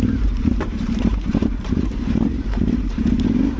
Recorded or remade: remade